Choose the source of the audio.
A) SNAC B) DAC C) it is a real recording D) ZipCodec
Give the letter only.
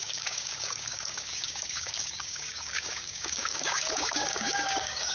B